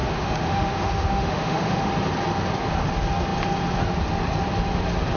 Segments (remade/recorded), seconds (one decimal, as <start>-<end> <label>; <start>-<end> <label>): 0.0-1.9 remade; 1.9-5.2 recorded